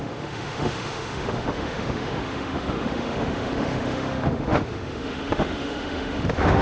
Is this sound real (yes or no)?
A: no